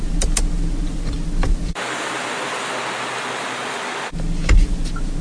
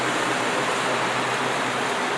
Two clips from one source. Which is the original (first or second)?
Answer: first